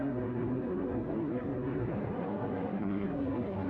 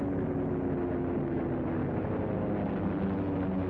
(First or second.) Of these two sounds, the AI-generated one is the first